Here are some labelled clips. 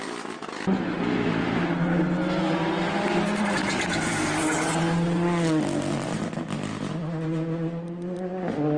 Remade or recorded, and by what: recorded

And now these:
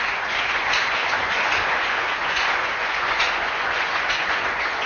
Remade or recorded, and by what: remade, vocoder, Vocos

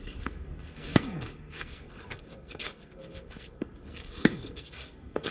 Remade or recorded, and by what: remade, codec, SNAC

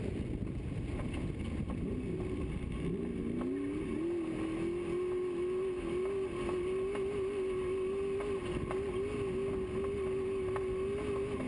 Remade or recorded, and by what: recorded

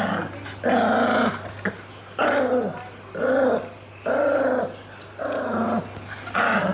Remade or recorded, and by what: recorded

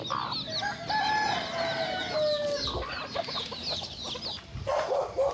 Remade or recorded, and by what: recorded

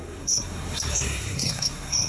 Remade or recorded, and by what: remade, codec, SNAC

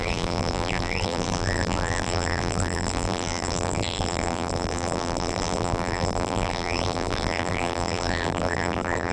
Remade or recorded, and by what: remade, vocoder, BigVGAN v2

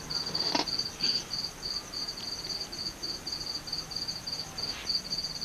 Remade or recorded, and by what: recorded